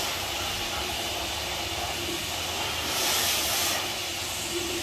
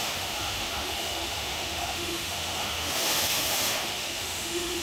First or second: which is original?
first